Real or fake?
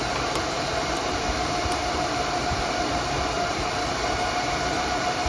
fake